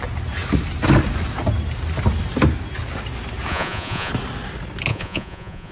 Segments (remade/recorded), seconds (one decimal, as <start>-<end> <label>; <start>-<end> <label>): 0.0-3.5 recorded; 3.5-4.1 remade; 4.1-4.9 recorded; 4.9-5.7 remade